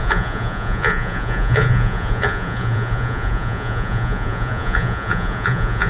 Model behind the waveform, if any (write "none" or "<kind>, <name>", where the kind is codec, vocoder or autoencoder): vocoder, Vocos